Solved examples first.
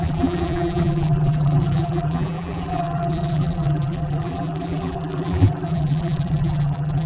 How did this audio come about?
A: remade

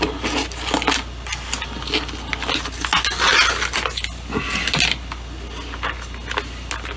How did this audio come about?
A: recorded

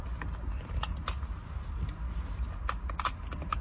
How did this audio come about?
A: recorded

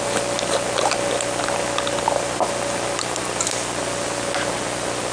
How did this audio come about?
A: recorded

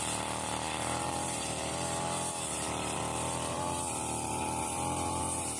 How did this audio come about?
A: remade